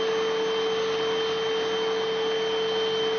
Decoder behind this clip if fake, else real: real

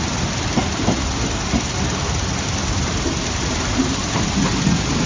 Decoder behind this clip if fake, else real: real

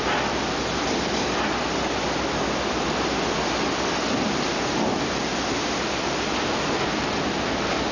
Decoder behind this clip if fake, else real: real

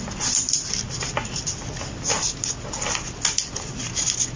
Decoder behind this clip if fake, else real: real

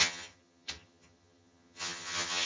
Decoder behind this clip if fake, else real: fake, vocoder, HiFi-GAN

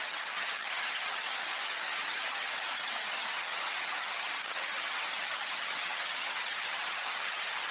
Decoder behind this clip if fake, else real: fake, vocoder, HiFi-GAN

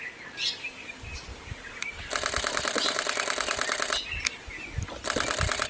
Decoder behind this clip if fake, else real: real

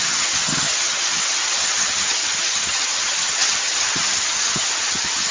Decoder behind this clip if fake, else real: fake, vocoder, HiFi-GAN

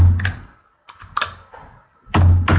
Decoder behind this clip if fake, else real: real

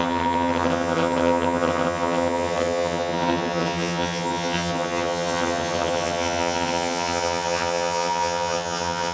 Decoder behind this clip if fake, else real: fake, vocoder, HiFi-GAN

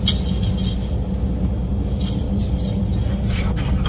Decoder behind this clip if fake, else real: real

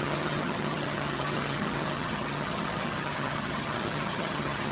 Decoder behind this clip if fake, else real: fake, vocoder, HiFi-GAN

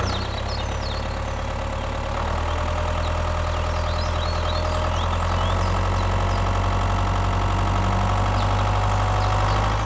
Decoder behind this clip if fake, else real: real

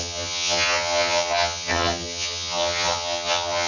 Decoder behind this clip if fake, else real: fake, vocoder, HiFi-GAN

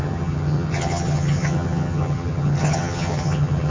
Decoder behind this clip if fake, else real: fake, vocoder, HiFi-GAN